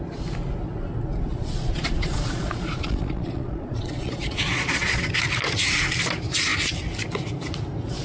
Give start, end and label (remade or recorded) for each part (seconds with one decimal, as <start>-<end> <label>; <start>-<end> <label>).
0.0-1.3 recorded; 1.3-5.0 remade; 5.0-8.0 recorded